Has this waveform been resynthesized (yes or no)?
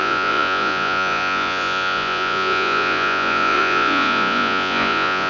yes